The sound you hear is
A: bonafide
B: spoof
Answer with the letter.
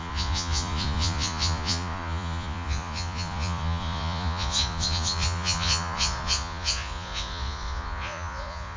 B